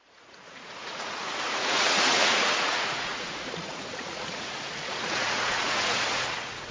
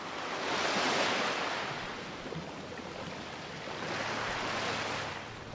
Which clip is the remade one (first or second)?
first